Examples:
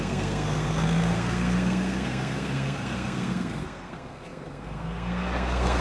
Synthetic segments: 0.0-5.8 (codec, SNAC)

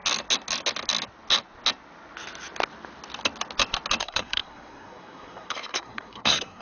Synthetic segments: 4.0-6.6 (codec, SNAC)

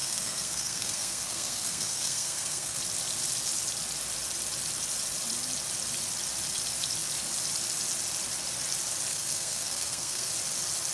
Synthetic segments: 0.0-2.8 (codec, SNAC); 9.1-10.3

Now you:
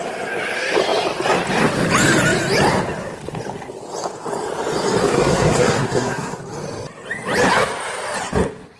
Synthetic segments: 5.0-6.4 (codec, SNAC)